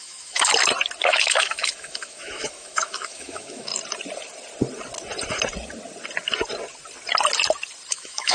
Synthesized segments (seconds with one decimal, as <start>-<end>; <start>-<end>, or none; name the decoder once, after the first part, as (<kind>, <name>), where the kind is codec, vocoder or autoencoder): 0.0-0.5 (autoencoder, DAC-VAE); 1.0-3.7; 7.9-8.3